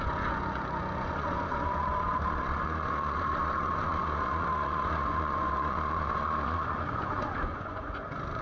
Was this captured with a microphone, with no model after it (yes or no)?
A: no